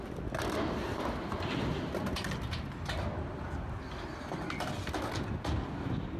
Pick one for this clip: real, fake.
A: real